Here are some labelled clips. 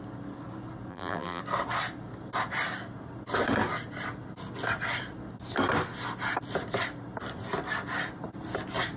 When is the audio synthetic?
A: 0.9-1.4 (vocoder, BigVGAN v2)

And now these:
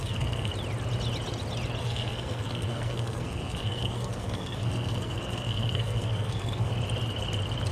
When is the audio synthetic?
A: 0.0-0.5 (codec, SNAC); 1.8-6.7